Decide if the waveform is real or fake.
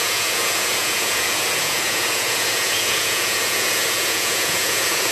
fake